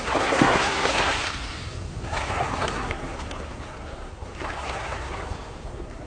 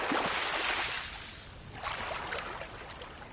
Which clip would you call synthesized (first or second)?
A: first